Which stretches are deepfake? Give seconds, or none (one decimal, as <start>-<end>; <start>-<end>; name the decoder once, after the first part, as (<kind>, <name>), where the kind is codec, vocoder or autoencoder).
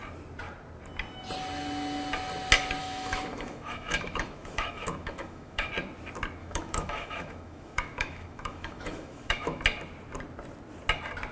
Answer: 2.8-5.7 (autoencoder, DAC-VAE); 6.4-9.6